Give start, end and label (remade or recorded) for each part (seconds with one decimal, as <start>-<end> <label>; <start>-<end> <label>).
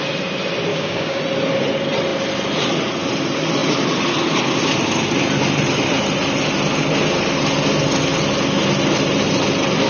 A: 0.0-0.7 recorded; 0.7-1.2 remade; 1.2-9.9 recorded